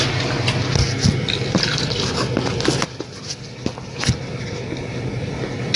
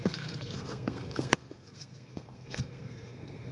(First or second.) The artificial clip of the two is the second